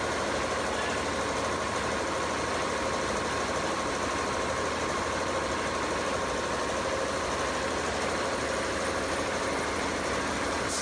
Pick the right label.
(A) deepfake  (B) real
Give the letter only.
B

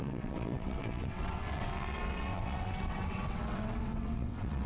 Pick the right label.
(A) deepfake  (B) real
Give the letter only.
A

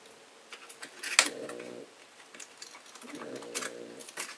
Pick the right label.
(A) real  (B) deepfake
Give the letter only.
A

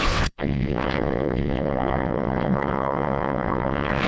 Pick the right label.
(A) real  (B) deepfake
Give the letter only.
B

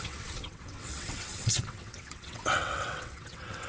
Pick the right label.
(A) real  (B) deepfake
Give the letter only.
B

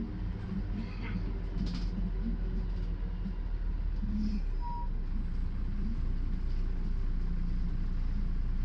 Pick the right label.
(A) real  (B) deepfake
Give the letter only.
A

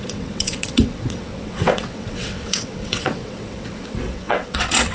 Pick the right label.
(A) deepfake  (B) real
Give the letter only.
A